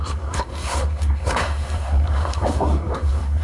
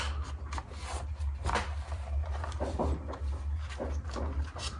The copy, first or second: first